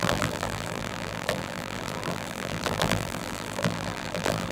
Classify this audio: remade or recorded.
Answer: remade